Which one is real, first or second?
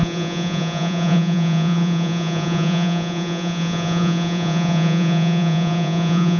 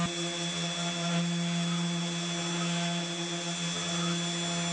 second